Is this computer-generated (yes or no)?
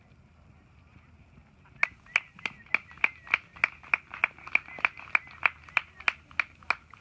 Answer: no